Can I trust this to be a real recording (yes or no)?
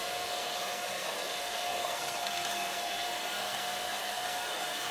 no